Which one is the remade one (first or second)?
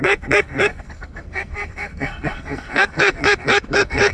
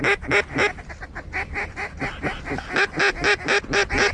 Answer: first